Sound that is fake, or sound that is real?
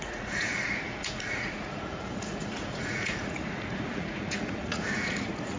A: fake